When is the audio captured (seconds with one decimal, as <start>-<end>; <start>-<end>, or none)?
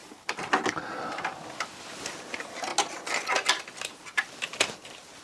0.0-5.2